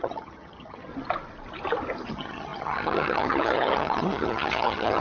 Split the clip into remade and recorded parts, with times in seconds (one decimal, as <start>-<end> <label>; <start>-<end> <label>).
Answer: 0.0-0.9 remade; 0.9-2.1 recorded; 2.1-5.0 remade